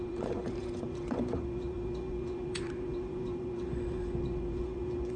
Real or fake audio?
fake